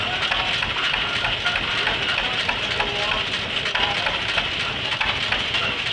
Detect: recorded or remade recorded